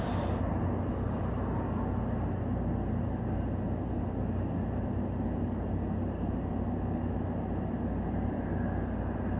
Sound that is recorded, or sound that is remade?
recorded